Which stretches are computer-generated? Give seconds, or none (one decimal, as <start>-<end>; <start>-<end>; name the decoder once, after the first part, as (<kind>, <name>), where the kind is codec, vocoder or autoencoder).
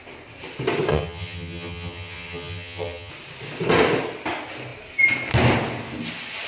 0.9-3.1 (vocoder, HiFi-GAN)